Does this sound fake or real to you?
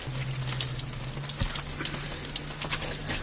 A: real